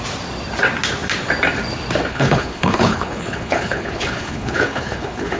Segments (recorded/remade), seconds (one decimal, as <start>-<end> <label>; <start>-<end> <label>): 0.0-2.1 recorded; 2.1-5.4 remade